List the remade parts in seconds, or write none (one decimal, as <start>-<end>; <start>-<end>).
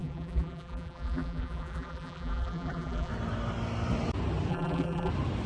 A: 0.0-3.1; 4.5-5.1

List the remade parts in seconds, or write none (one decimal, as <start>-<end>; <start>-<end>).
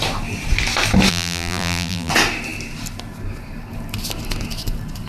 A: 1.1-2.1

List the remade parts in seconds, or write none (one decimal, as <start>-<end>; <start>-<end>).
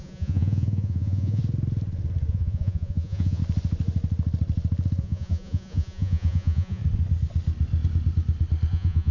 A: 0.0-1.4; 2.3-3.4; 5.0-6.8; 8.7-9.1